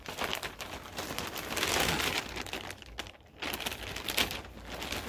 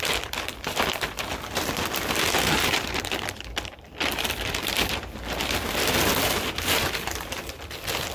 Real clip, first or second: first